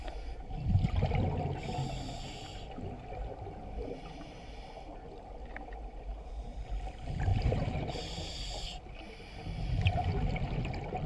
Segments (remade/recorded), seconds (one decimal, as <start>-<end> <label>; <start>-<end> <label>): 0.0-7.3 recorded; 7.3-7.9 remade; 7.9-11.1 recorded